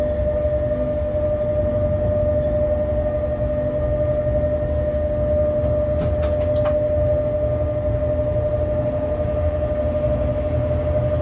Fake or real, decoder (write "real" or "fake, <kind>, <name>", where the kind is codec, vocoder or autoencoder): real